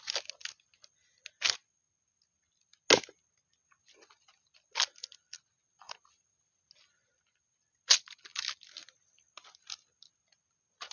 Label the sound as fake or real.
real